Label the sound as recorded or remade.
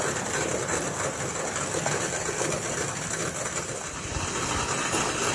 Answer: recorded